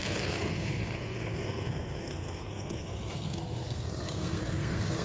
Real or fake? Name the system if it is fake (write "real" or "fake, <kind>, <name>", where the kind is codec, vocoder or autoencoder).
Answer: fake, codec, SNAC